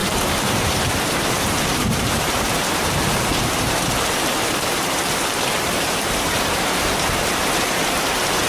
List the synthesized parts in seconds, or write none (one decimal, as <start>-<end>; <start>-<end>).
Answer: 0.0-8.5